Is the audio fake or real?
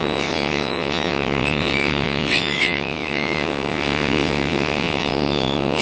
fake